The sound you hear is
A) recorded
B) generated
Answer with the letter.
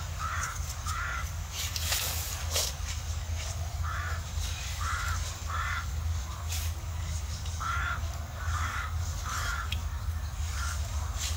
B